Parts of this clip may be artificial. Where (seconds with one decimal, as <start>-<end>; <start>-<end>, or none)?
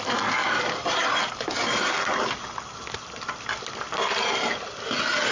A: 0.4-1.9